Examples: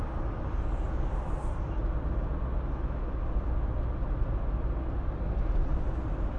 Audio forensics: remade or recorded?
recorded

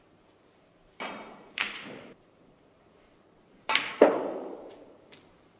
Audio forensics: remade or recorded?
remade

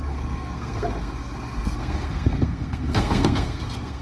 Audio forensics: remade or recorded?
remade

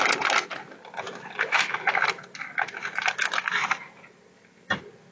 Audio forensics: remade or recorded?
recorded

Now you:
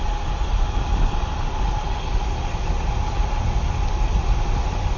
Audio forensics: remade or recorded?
recorded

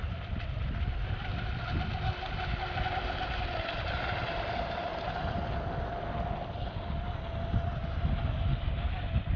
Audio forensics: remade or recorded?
recorded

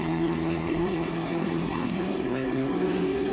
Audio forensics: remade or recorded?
remade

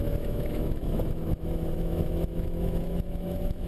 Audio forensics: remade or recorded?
remade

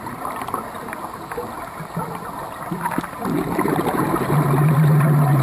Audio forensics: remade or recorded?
recorded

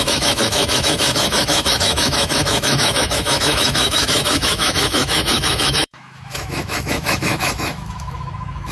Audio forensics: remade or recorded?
remade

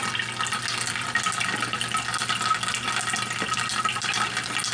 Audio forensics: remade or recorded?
recorded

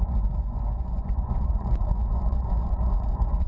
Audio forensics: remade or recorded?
remade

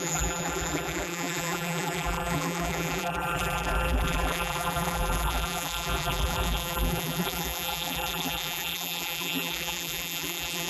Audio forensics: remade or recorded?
remade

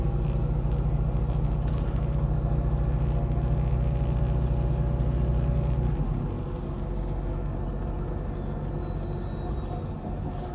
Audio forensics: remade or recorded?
recorded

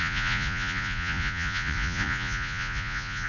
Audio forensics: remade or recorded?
remade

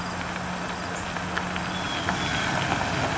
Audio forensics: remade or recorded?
recorded